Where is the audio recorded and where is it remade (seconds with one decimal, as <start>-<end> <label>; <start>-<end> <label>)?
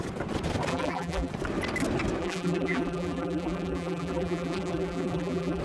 0.0-0.7 recorded; 0.7-1.3 remade; 1.3-2.2 recorded; 2.2-5.6 remade